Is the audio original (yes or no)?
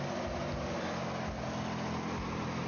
yes